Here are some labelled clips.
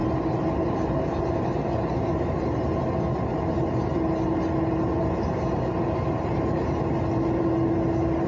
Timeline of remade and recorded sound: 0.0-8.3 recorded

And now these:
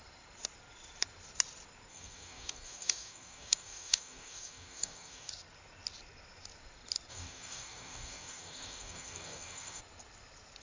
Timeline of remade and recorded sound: 0.0-1.9 recorded; 1.9-5.3 remade; 5.3-7.1 recorded; 7.1-9.8 remade; 9.8-10.6 recorded

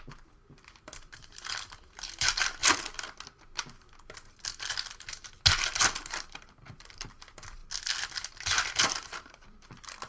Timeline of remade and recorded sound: 0.0-2.6 remade; 2.6-6.0 recorded; 6.0-7.6 remade; 7.6-9.3 recorded; 9.3-10.1 remade